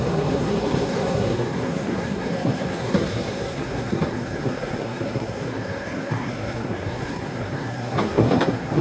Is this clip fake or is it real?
fake